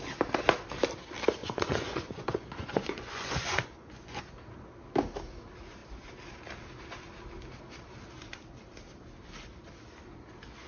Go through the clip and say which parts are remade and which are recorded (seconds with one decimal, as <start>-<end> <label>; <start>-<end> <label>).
0.0-1.4 recorded; 1.4-4.2 remade; 4.2-10.7 recorded